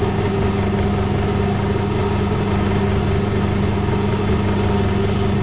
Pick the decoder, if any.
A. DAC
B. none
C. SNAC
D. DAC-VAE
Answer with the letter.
B